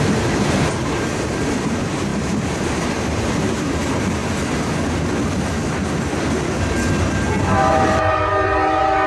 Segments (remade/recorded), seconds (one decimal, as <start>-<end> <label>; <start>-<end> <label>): 0.0-4.2 remade; 4.2-7.4 recorded; 7.4-9.1 remade